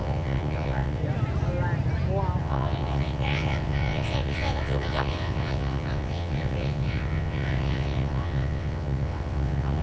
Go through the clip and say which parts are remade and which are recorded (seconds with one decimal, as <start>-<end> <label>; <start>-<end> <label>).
0.0-1.0 remade; 1.0-2.4 recorded; 2.4-9.8 remade